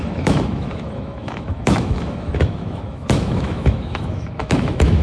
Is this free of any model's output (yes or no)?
no